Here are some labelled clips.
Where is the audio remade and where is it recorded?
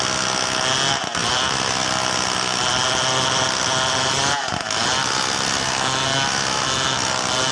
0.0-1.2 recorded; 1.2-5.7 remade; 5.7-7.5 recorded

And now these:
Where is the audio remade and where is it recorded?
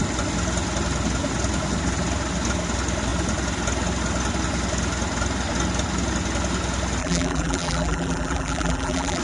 0.0-7.0 recorded; 7.0-9.2 remade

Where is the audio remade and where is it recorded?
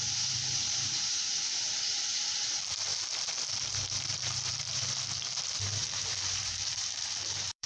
0.0-4.8 remade; 4.8-5.3 recorded; 5.3-7.7 remade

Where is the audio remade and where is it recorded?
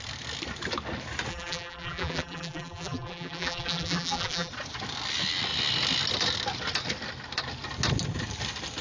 0.0-1.3 recorded; 1.3-4.5 remade; 4.5-8.8 recorded